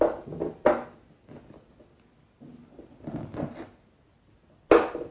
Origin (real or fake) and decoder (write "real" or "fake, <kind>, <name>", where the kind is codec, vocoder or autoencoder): real